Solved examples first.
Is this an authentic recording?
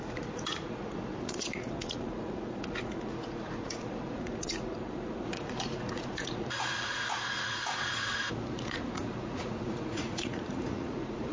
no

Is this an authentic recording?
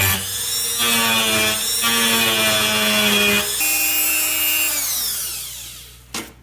yes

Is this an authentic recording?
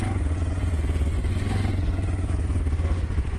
no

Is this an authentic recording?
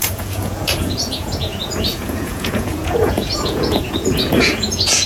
no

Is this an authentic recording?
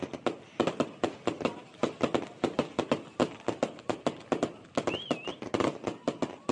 yes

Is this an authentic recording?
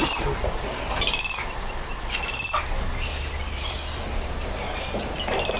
yes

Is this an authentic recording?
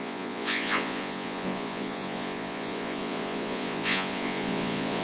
no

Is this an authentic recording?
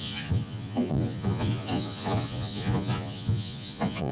no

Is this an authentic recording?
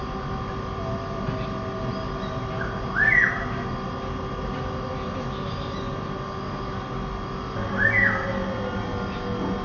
yes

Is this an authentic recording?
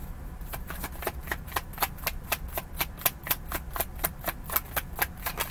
yes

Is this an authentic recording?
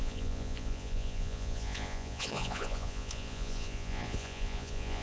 no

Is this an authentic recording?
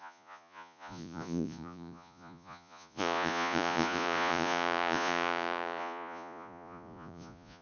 no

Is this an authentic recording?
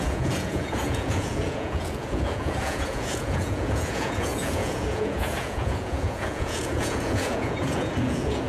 no